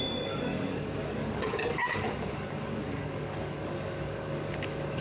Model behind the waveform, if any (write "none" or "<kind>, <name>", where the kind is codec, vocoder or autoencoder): codec, DAC